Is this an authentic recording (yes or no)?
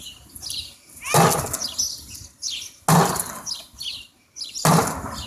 yes